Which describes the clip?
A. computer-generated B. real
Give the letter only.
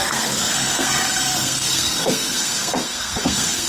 A